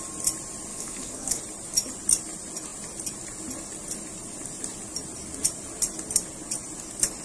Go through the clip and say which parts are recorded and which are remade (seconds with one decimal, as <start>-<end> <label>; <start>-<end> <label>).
0.0-0.7 recorded; 0.7-1.4 remade; 1.4-7.2 recorded